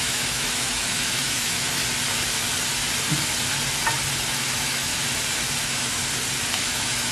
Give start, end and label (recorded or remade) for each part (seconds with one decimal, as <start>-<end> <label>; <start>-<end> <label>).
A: 0.0-1.8 remade; 1.8-4.3 recorded; 4.3-4.9 remade; 4.9-5.6 recorded; 5.6-6.0 remade; 6.0-6.5 recorded; 6.5-7.1 remade